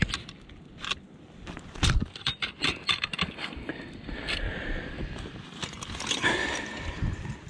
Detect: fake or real real